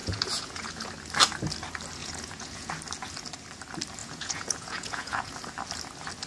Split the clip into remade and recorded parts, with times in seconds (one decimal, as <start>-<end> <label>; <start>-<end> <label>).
0.0-0.9 remade; 0.9-2.0 recorded; 2.0-2.7 remade; 2.7-4.0 recorded; 4.0-5.3 remade; 5.3-6.3 recorded